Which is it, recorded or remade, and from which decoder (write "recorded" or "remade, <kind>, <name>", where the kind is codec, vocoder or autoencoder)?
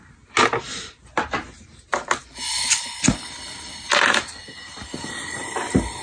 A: recorded